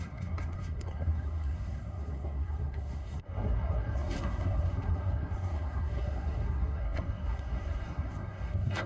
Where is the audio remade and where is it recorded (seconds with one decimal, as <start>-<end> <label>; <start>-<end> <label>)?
0.0-8.9 remade